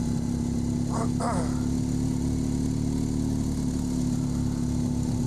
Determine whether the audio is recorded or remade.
recorded